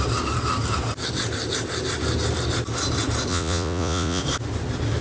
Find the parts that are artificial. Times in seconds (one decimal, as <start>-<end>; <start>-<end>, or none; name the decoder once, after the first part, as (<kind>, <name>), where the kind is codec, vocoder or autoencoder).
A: 3.3-4.2 (vocoder, Vocos)